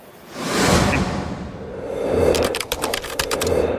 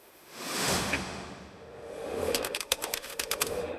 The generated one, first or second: second